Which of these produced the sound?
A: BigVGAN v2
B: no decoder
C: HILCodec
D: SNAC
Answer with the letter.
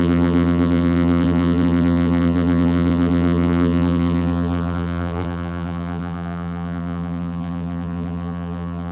A